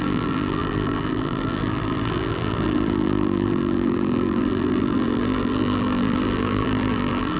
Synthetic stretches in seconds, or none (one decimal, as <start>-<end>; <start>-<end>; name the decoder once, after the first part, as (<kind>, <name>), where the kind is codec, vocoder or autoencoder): 0.0-7.4 (vocoder, BigVGAN v2)